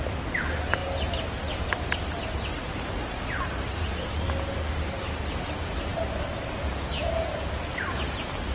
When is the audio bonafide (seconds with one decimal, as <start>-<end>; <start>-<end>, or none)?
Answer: 0.0-2.5; 3.9-8.5